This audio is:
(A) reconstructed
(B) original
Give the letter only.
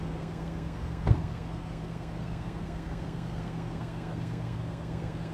A